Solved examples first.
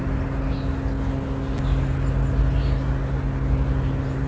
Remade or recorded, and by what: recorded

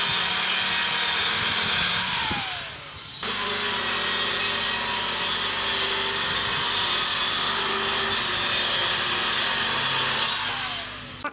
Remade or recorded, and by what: recorded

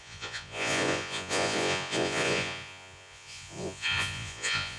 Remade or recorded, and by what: remade, vocoder, Vocos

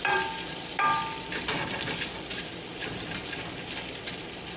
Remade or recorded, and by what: recorded